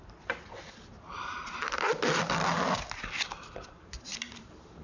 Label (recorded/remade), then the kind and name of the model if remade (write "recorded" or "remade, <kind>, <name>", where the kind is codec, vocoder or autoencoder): remade, vocoder, BigVGAN v2